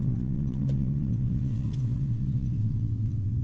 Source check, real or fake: fake